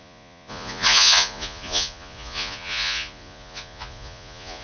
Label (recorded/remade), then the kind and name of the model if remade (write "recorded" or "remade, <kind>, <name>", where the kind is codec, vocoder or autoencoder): remade, vocoder, Vocos